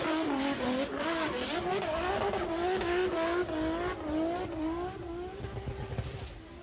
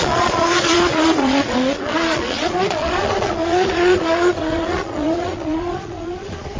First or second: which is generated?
second